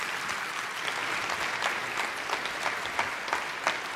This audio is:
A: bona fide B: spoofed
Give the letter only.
A